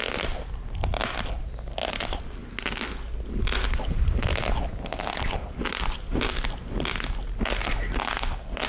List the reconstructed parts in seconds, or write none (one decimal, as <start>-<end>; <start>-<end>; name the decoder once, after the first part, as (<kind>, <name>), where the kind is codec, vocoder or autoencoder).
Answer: none